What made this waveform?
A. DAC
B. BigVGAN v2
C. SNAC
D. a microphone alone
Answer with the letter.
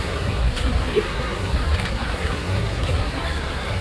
C